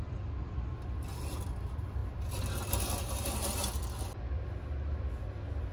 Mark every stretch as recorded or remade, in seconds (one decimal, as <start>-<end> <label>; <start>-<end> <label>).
0.0-5.7 recorded

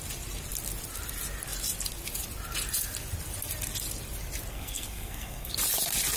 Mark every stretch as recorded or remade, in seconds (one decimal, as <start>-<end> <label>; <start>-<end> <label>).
0.0-4.5 recorded; 4.5-5.5 remade; 5.5-6.2 recorded